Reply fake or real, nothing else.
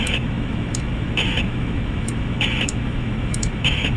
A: fake